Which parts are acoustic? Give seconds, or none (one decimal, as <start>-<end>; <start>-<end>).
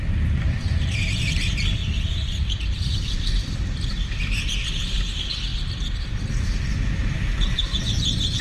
0.0-8.4